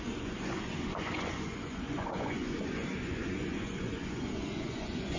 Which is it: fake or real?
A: fake